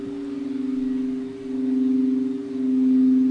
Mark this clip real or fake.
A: real